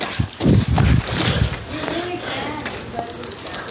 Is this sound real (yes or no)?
yes